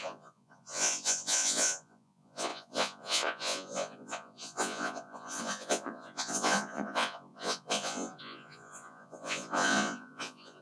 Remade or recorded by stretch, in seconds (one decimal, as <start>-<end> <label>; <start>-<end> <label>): 0.0-10.6 remade